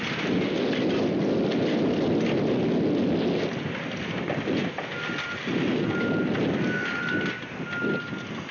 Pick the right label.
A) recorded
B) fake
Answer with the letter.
A